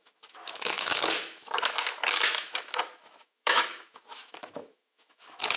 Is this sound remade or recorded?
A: remade